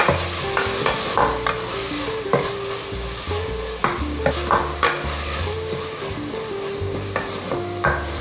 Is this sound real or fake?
real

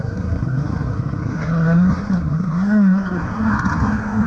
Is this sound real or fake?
fake